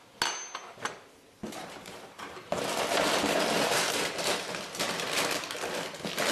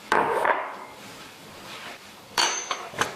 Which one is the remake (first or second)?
second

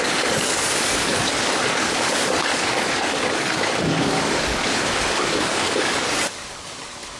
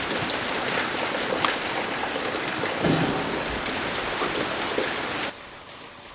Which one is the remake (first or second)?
first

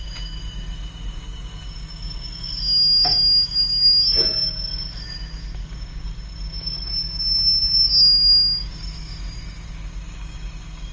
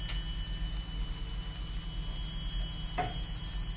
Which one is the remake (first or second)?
first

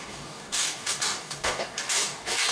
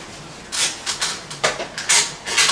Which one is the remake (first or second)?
first